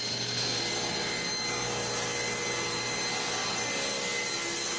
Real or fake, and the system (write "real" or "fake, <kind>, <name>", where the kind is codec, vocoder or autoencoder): real